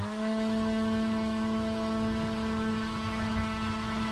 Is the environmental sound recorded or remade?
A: remade